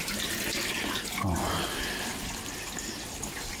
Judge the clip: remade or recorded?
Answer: recorded